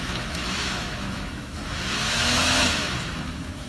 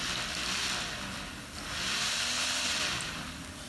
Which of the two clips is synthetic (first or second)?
first